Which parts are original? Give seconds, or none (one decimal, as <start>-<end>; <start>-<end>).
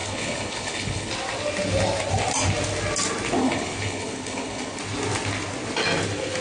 1.1-3.4; 4.8-6.4